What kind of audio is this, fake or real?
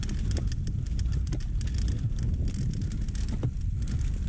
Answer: real